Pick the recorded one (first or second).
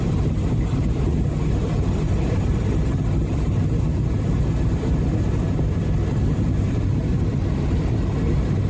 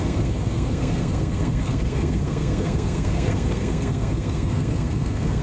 first